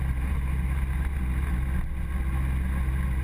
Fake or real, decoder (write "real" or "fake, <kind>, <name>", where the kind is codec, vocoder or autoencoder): real